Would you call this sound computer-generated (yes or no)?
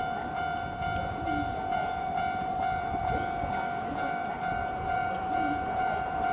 yes